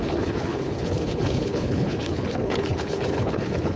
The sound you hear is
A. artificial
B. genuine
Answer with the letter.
A